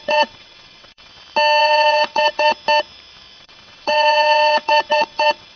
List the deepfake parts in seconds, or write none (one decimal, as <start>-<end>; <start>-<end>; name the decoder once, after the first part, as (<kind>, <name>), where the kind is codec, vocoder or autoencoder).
0.0-1.1 (vocoder, WaveNeXt); 1.6-2.5; 3.4-5.6